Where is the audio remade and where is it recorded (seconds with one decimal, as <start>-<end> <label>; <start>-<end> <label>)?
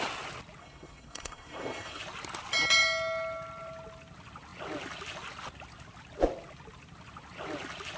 0.0-0.6 recorded; 0.6-2.0 remade; 2.0-8.0 recorded